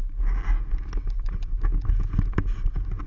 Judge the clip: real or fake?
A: real